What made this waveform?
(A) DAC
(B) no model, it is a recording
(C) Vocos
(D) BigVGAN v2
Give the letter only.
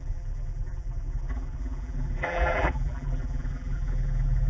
D